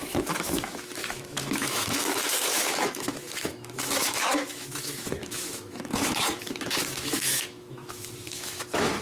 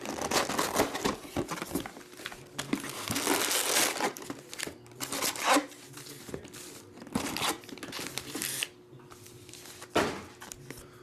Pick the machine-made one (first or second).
first